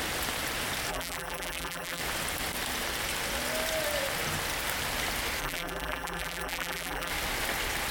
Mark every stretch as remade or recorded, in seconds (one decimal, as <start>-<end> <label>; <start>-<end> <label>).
0.0-0.9 recorded; 0.9-2.0 remade; 2.0-5.4 recorded; 5.4-7.1 remade; 7.1-7.9 recorded